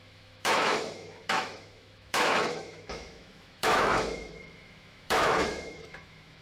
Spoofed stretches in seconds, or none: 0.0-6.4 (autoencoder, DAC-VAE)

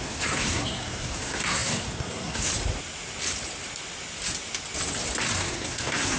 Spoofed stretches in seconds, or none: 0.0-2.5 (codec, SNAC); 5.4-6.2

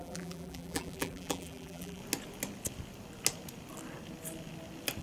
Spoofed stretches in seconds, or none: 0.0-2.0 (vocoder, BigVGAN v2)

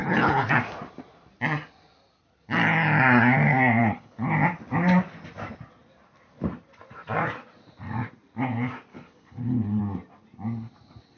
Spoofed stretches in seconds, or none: 0.0-0.5 (codec, HILCodec); 3.8-4.3; 8.9-9.8